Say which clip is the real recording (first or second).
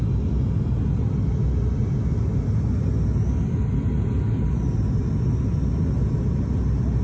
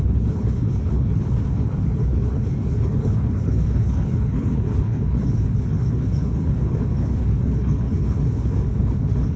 first